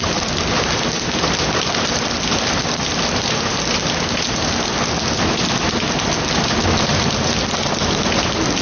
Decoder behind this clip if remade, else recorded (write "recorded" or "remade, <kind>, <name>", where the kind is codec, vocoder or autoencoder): recorded